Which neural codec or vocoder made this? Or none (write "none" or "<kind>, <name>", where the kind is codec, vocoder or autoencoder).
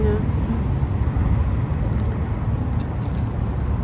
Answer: none